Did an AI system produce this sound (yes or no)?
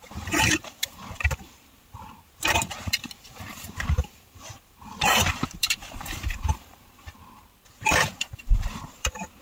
yes